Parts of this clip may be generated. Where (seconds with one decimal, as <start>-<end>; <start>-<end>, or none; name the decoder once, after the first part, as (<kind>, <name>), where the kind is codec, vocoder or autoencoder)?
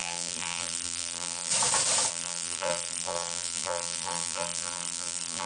0.0-1.5 (vocoder, BigVGAN v2); 2.1-5.5